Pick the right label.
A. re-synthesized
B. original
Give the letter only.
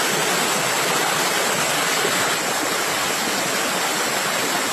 B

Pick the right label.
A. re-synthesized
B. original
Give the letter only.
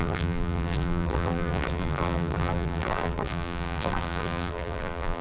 A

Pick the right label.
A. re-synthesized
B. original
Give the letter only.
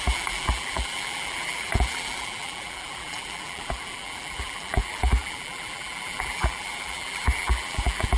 A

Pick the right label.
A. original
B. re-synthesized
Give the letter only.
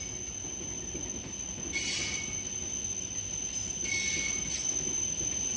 A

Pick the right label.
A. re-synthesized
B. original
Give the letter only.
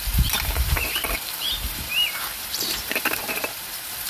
A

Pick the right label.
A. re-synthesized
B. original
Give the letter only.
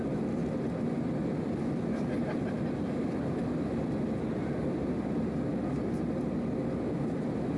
B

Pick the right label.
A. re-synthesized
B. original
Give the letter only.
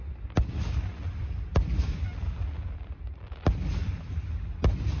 B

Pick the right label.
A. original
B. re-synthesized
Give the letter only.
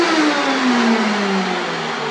A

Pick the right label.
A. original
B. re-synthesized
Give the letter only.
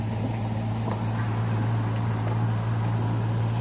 A